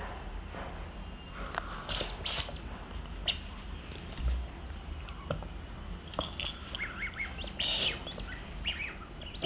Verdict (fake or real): real